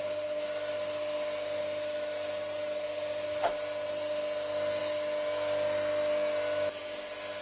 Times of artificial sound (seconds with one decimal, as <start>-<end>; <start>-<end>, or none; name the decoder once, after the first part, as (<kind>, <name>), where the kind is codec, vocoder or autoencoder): none